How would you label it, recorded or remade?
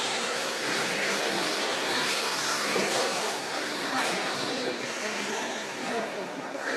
remade